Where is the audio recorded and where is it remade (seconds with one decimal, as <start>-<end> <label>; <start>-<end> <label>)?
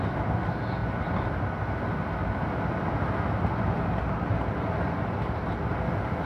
0.0-0.8 recorded; 0.8-1.8 remade; 1.8-6.3 recorded